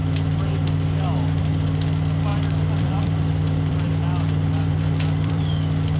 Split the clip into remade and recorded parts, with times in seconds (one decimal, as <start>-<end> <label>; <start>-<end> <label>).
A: 0.0-2.3 recorded; 2.3-5.4 remade; 5.4-6.0 recorded